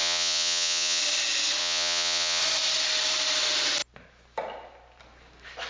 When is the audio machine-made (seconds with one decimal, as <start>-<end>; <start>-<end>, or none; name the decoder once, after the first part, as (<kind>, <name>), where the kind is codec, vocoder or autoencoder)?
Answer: 0.0-1.0 (vocoder, Vocos); 1.6-2.4